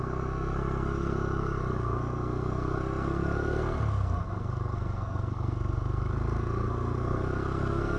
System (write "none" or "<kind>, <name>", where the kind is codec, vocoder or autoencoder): codec, SNAC